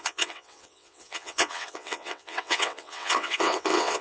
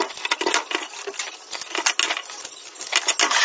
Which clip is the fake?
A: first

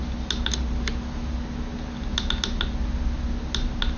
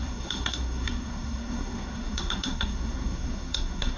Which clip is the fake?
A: second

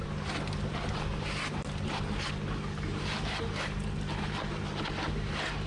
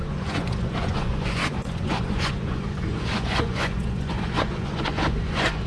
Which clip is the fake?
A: second